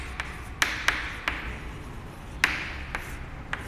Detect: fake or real real